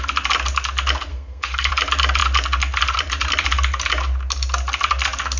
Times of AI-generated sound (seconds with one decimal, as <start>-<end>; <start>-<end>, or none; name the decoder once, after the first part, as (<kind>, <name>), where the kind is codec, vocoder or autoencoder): 1.1-1.7 (codec, SNAC)